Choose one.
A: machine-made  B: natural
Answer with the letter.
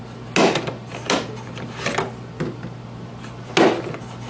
B